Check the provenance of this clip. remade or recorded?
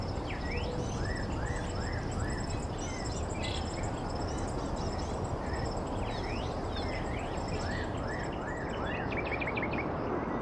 recorded